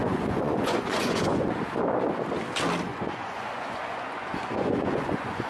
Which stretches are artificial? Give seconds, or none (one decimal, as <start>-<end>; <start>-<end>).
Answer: 0.0-1.6; 2.9-5.5